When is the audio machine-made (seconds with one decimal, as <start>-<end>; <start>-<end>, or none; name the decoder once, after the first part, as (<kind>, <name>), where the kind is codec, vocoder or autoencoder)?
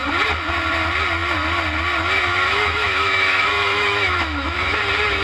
2.3-4.8 (autoencoder, DAC-VAE)